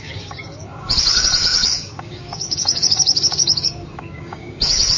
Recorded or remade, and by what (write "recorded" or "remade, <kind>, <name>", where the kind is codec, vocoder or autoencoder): remade, codec, DAC